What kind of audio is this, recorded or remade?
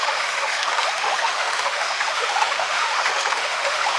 remade